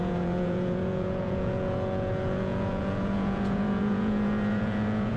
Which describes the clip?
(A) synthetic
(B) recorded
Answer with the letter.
A